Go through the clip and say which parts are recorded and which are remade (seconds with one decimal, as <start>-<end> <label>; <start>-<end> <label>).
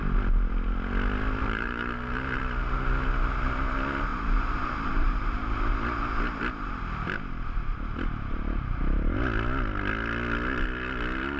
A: 0.0-1.4 recorded; 1.4-2.4 remade; 2.4-4.1 recorded; 4.1-5.7 remade; 5.7-11.4 recorded